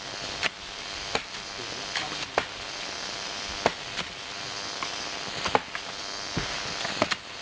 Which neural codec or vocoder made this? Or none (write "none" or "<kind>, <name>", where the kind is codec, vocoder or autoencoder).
none